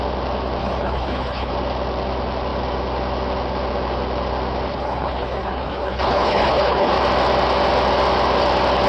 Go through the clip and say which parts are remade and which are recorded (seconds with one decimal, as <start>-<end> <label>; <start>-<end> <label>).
0.0-0.6 recorded; 0.6-1.5 remade; 1.5-4.7 recorded; 4.7-6.9 remade; 6.9-8.9 recorded